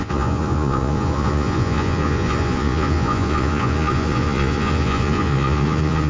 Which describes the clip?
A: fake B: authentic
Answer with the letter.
A